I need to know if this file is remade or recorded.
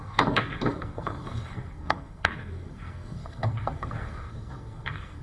remade